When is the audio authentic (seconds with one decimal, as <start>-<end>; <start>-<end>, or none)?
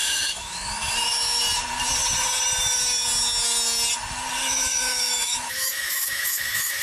1.4-4.4